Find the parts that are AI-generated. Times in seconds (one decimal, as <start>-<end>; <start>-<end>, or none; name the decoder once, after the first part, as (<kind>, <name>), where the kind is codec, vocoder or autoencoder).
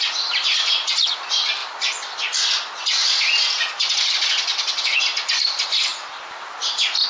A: none